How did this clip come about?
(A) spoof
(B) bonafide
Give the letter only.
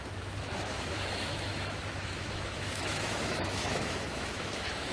A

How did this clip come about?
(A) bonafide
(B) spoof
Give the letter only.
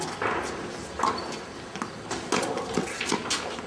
A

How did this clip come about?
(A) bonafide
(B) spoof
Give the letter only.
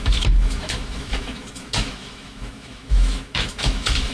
B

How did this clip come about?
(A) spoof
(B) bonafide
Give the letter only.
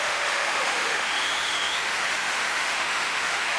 A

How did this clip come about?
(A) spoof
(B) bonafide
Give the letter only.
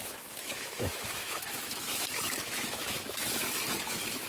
A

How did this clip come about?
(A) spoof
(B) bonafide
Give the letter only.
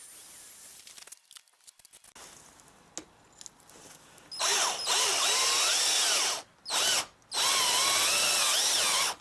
B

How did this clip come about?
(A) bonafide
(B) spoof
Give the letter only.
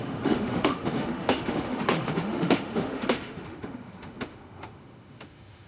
B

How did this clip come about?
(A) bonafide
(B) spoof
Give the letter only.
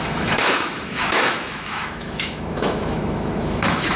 B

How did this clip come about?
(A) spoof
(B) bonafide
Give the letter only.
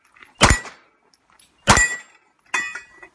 B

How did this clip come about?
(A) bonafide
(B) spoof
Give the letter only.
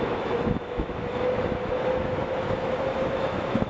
B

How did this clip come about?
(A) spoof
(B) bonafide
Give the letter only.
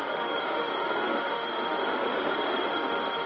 A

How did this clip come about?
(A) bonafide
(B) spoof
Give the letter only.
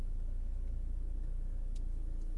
A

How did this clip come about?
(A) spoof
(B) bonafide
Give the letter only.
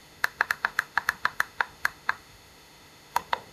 A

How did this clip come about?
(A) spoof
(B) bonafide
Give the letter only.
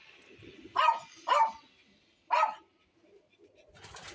B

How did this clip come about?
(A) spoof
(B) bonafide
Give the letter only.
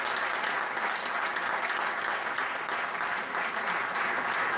B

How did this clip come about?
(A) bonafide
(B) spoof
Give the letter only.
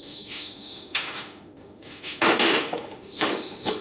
B